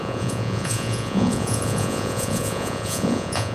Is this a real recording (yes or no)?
no